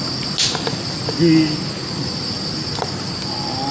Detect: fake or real real